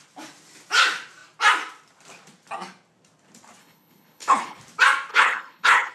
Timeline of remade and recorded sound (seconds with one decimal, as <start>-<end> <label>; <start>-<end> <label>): 0.0-3.6 recorded; 3.6-4.6 remade; 4.6-5.1 recorded; 5.1-5.9 remade